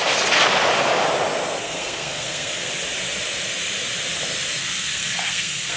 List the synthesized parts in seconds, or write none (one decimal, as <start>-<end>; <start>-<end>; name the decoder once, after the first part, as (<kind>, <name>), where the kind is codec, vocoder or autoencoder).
1.6-2.7 (codec, SNAC); 4.6-5.8